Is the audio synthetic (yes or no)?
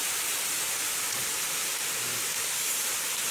no